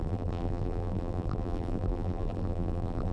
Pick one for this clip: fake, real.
fake